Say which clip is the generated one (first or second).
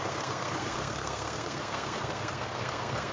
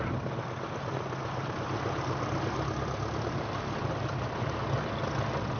first